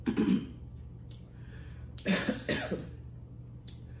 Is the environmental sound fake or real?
real